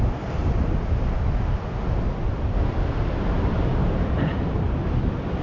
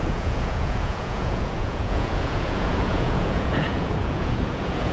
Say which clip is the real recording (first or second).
first